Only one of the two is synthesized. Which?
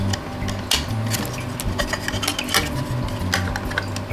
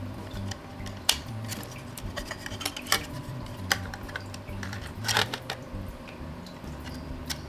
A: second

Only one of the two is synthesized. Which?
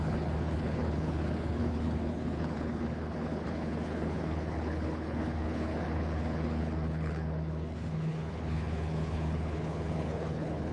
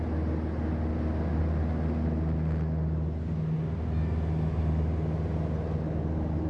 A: first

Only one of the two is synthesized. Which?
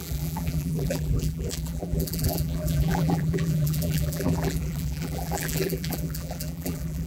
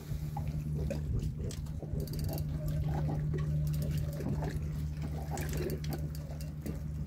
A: first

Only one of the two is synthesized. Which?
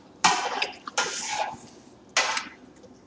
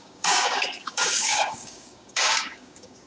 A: second